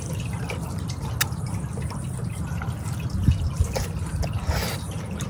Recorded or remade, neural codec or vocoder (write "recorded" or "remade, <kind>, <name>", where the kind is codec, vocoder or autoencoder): recorded